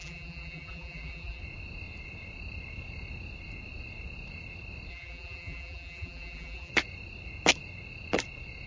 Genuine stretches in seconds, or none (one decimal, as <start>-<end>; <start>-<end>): 1.4-4.9; 6.7-8.7